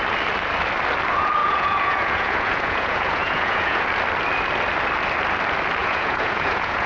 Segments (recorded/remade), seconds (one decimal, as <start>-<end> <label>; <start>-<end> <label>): 0.0-1.4 recorded; 1.4-3.8 remade; 3.8-5.8 recorded; 5.8-6.9 remade